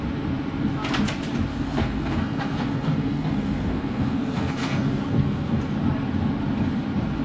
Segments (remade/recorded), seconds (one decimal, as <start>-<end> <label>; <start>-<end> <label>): 0.0-1.5 recorded; 1.5-5.6 remade; 5.6-7.2 recorded